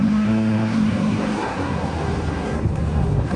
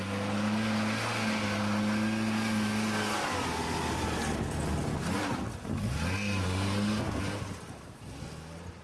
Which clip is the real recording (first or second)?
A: second